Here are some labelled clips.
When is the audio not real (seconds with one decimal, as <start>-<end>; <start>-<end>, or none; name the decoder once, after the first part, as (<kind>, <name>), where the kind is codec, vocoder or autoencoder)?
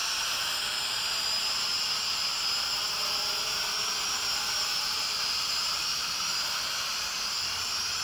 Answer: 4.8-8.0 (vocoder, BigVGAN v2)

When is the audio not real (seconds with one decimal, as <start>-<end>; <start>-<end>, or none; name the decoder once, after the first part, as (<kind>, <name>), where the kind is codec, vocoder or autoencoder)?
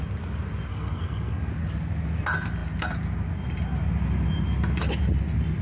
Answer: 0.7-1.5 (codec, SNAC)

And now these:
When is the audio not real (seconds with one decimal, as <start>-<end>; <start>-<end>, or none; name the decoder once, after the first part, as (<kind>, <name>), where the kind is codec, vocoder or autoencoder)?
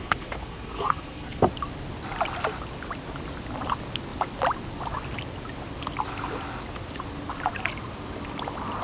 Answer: 0.0-1.4 (codec, SNAC)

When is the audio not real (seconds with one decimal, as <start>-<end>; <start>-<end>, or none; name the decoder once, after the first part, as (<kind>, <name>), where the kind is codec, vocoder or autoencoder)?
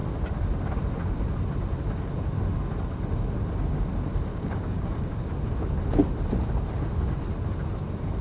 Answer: 4.3-5.1 (codec, DAC)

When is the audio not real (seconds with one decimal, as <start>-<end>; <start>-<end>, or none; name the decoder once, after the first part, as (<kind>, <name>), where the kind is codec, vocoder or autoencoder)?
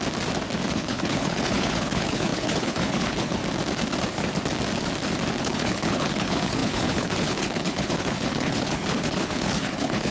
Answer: 0.7-3.4 (codec, HILCodec); 5.4-10.1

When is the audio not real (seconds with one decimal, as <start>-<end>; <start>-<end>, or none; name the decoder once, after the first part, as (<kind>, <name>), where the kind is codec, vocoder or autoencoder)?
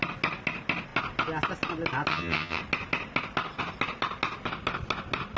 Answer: 2.1-2.6 (vocoder, HiFi-GAN)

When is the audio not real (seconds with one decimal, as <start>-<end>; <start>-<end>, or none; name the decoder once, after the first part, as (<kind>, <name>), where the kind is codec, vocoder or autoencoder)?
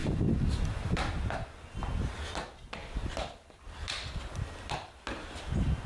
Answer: 0.0-1.0 (vocoder, BigVGAN v2); 2.8-5.0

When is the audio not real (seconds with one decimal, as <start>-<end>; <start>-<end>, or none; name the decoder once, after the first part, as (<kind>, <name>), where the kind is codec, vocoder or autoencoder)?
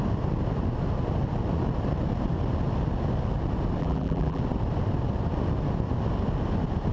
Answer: 3.8-4.4 (vocoder, BigVGAN v2)